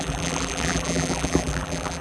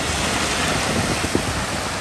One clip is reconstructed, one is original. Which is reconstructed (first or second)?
first